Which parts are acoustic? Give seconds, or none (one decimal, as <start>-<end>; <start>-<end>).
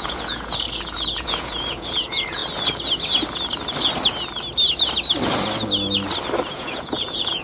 2.4-6.5